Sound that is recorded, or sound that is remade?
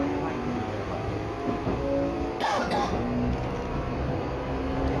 recorded